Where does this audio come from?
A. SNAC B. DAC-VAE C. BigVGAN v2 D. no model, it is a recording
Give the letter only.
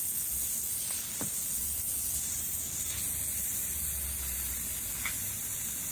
D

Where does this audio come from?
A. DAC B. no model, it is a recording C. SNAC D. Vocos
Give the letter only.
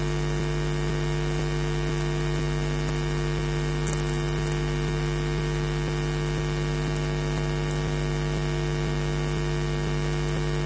B